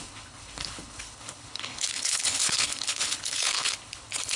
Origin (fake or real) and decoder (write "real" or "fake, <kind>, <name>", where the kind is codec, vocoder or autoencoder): fake, codec, HILCodec